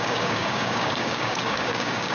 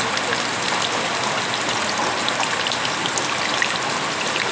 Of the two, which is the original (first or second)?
second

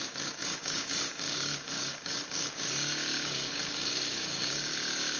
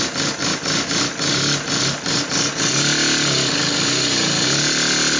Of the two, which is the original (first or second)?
second